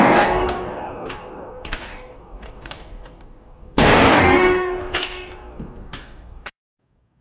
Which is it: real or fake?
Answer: fake